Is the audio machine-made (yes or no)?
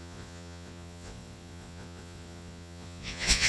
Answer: yes